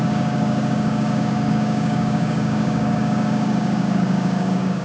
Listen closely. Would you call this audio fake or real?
fake